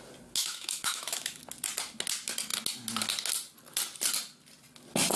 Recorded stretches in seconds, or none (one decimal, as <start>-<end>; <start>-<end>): 0.0-0.4; 1.4-5.2